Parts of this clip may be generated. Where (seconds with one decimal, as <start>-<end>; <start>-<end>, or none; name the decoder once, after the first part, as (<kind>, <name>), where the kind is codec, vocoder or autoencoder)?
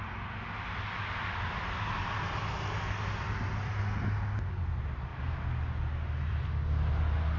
none